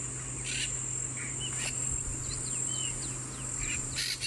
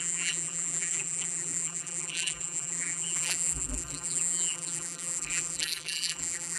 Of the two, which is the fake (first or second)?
second